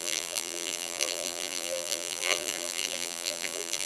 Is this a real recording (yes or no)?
no